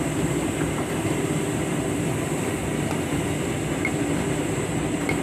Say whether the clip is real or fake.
real